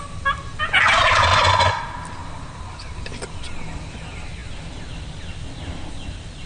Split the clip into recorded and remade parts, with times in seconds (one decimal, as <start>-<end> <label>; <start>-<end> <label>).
0.0-1.3 recorded; 1.3-1.8 remade; 1.8-6.5 recorded